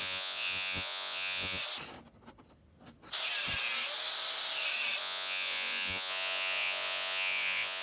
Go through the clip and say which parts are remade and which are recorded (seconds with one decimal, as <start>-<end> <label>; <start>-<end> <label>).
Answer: 0.0-1.6 remade; 1.6-5.0 recorded; 5.0-7.8 remade